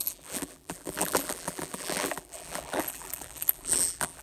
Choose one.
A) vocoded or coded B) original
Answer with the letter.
A